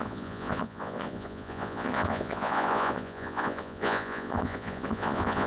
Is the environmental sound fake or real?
fake